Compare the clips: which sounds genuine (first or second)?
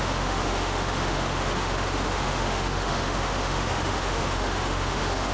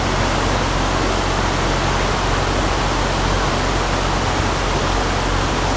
second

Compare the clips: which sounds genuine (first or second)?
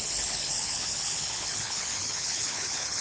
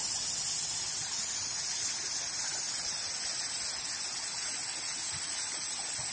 second